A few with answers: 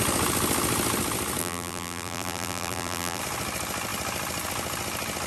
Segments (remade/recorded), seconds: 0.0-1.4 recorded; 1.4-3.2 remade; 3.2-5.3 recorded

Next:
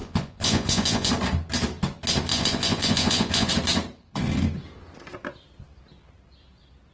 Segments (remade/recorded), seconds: 0.0-1.1 remade; 1.1-2.3 recorded; 2.3-3.5 remade; 3.5-6.9 recorded

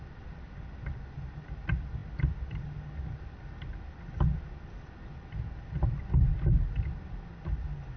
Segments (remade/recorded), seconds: 0.0-8.0 recorded

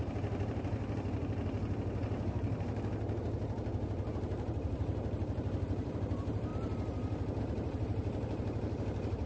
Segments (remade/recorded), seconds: 0.0-6.5 remade; 6.5-7.4 recorded; 7.4-9.3 remade